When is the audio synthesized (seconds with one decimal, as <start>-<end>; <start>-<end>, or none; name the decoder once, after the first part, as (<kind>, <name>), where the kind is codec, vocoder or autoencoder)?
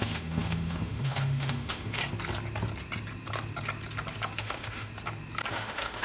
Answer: 0.0-2.0 (autoencoder, DAC-VAE); 4.4-4.9; 5.5-6.0